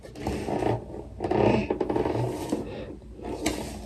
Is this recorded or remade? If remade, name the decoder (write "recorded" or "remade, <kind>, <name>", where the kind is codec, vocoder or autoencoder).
recorded